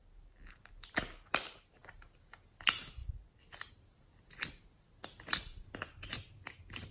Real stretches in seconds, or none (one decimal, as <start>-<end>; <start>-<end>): 0.0-6.9